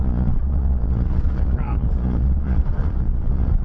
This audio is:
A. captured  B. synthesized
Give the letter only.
B